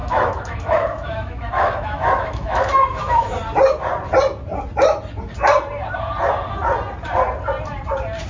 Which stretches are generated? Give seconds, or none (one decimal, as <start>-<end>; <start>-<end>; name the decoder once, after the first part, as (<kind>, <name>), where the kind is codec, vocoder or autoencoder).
0.0-3.3 (autoencoder, DAC-VAE)